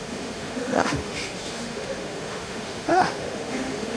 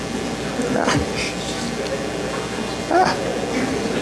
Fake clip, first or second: first